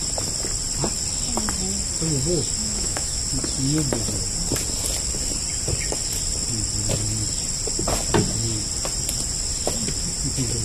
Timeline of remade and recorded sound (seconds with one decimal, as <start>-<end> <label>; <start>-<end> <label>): 0.0-2.6 recorded; 2.6-3.2 remade; 3.2-10.6 recorded

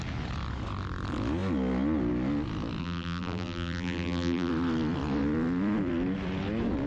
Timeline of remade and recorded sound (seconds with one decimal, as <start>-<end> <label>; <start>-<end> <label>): 0.0-2.8 recorded; 2.8-4.5 remade; 4.5-6.9 recorded